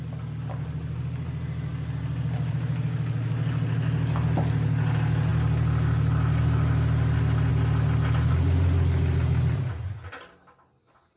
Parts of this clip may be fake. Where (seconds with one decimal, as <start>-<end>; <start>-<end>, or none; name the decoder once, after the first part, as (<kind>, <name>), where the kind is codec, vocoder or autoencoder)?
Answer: none